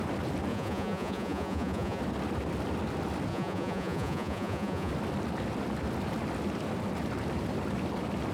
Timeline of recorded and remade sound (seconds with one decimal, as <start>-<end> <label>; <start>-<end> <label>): 0.0-0.5 recorded; 0.5-2.0 remade; 2.0-3.3 recorded; 3.3-4.9 remade; 4.9-8.3 recorded